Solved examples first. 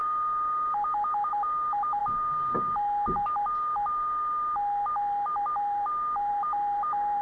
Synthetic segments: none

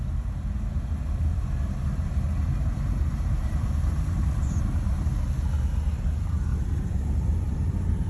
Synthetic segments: 2.4-4.9 (vocoder, BigVGAN v2); 6.5-8.1

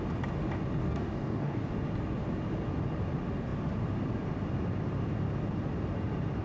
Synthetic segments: 0.8-1.7 (codec, DAC)

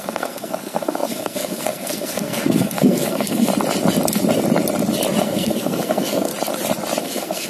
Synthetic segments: 0.0-3.5 (codec, SNAC); 5.2-6.3; 7.0-7.5